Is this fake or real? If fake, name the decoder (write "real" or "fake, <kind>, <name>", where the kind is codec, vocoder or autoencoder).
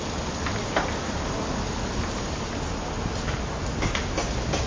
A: real